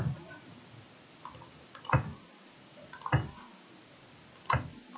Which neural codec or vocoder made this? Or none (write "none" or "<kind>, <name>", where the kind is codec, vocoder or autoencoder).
none